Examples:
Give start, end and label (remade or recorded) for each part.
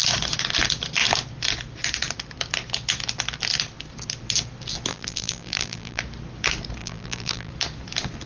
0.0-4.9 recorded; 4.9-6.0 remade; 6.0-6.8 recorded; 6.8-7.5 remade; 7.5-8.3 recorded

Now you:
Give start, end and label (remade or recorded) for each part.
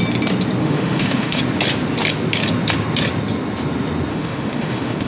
0.0-0.6 recorded; 0.6-1.4 remade; 1.4-4.1 recorded; 4.1-5.1 remade